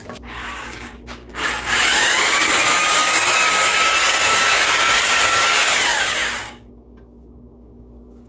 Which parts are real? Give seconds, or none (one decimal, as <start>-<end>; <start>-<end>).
none